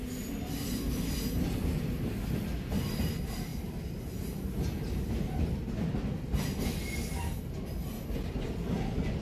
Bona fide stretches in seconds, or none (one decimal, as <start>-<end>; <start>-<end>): 0.0-3.5; 4.1-9.2